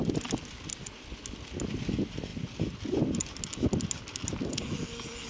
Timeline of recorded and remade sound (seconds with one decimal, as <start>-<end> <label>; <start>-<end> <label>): 0.0-5.3 recorded